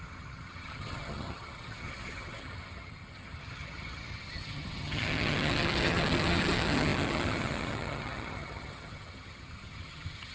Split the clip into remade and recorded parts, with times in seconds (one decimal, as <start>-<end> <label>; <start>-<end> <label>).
0.0-10.3 remade

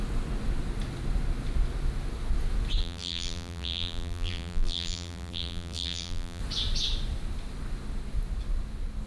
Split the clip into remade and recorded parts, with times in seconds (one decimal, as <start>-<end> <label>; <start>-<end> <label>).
0.0-2.8 recorded; 2.8-6.4 remade; 6.4-9.1 recorded

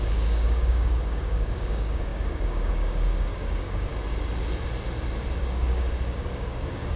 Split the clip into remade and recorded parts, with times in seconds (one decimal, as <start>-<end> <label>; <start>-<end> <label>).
0.0-3.9 remade; 3.9-5.4 recorded; 5.4-7.0 remade

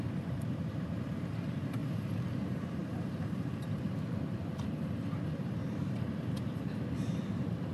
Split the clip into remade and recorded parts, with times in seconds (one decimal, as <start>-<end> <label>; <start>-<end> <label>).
0.0-7.7 remade

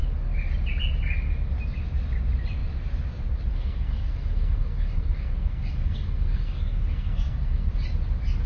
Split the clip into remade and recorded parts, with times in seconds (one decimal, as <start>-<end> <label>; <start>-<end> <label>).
0.0-3.5 recorded; 3.5-7.7 remade; 7.7-8.5 recorded

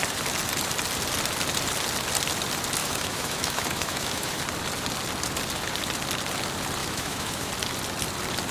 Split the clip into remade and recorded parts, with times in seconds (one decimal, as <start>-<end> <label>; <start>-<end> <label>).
0.0-2.8 recorded; 2.8-4.4 remade; 4.4-6.8 recorded; 6.8-7.5 remade; 7.5-8.5 recorded